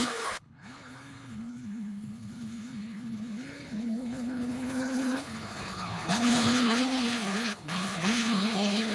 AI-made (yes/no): yes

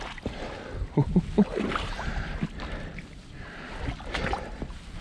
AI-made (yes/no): no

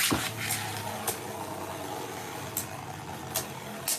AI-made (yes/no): no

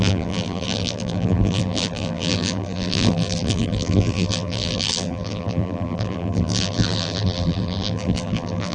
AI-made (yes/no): yes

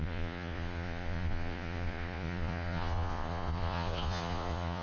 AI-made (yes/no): yes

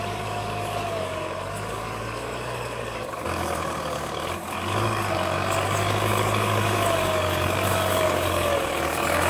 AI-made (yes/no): yes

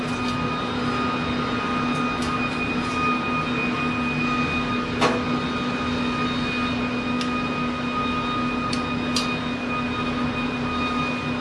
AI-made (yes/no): no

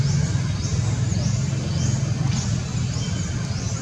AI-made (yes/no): no